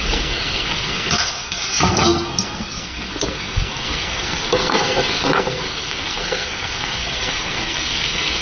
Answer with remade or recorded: remade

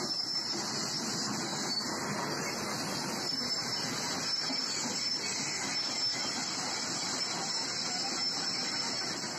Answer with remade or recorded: recorded